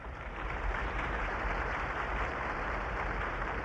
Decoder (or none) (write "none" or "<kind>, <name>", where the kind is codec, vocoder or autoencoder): vocoder, BigVGAN v2